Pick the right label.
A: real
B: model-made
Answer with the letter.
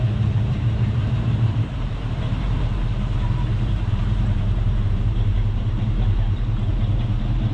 B